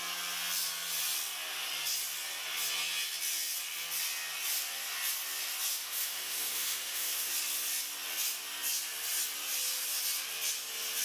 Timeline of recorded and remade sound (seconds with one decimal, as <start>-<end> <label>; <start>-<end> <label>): 0.0-5.7 recorded; 5.7-7.3 remade; 7.3-11.0 recorded